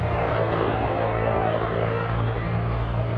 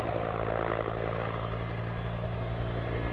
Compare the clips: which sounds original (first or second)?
second